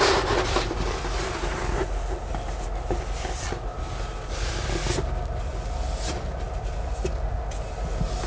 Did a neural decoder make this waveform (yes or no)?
no